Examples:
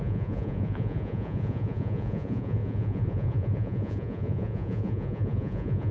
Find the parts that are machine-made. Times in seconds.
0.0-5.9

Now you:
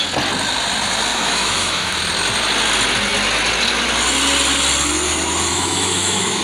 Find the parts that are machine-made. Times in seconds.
1.1-2.0; 5.5-6.4

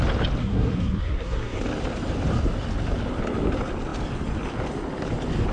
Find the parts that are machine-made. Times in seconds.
0.4-1.6

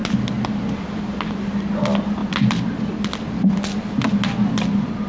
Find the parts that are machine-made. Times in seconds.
none

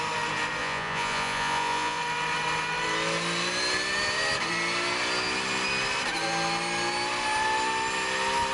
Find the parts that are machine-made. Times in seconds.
0.6-2.0

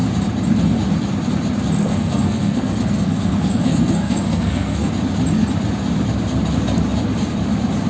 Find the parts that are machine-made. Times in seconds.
1.8-4.9

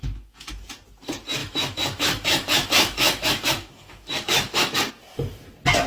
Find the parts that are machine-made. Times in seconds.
0.0-0.5; 1.4-4.9

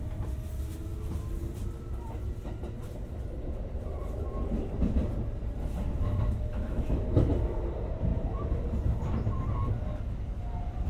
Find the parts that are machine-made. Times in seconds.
6.5-7.3